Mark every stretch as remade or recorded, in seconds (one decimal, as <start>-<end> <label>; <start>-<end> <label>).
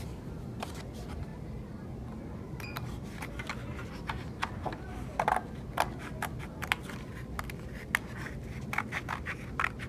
0.0-9.9 recorded